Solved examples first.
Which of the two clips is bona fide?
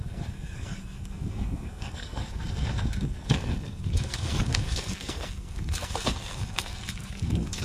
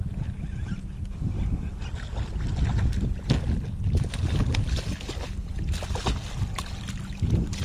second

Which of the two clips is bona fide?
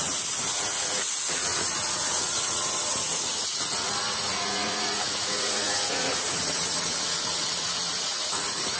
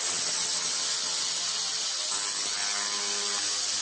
second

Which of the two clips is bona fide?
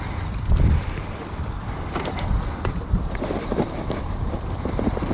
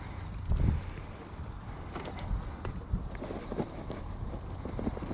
second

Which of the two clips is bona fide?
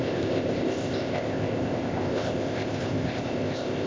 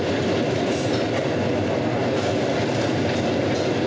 second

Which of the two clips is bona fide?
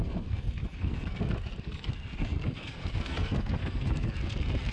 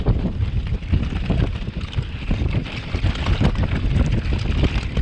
second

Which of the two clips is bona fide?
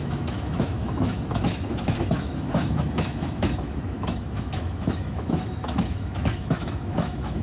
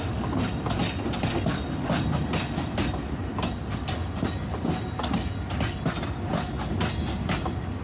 second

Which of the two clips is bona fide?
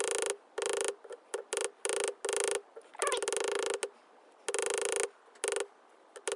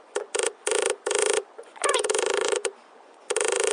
first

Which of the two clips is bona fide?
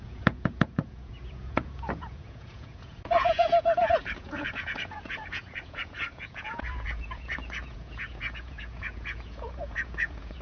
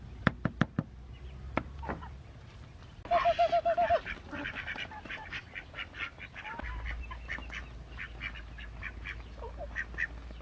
second